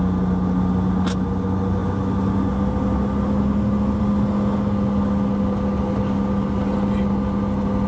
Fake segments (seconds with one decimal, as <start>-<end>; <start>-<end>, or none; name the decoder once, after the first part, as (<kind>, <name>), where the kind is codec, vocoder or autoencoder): none